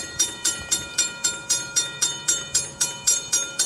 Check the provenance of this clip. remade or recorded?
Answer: remade